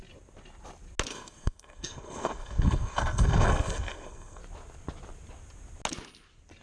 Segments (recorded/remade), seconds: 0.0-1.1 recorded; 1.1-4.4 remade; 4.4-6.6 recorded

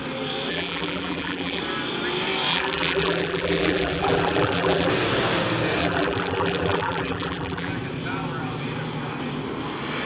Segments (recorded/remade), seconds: 0.0-0.5 recorded; 0.5-1.6 remade; 1.6-2.5 recorded; 2.5-4.9 remade; 4.9-5.8 recorded; 5.8-7.7 remade; 7.7-10.1 recorded

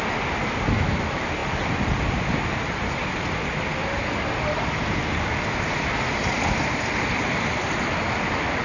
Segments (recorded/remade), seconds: 0.0-8.6 recorded

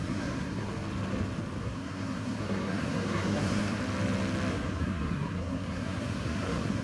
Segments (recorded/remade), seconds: 0.0-0.7 remade; 0.7-1.6 recorded; 1.6-3.8 remade; 3.8-4.5 recorded; 4.5-6.8 remade

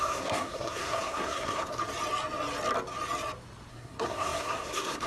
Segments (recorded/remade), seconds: 0.0-1.8 remade; 1.8-3.7 recorded; 3.7-5.1 remade

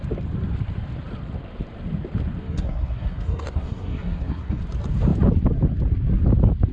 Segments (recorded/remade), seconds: 0.0-2.4 recorded; 2.4-4.6 remade; 4.6-6.7 recorded